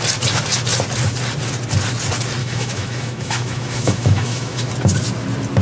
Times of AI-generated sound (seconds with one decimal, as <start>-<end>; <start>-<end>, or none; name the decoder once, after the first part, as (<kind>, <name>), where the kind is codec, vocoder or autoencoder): 2.4-4.7 (autoencoder, DAC-VAE)